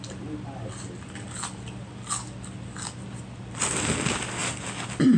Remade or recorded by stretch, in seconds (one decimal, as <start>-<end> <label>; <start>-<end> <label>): 0.0-5.2 recorded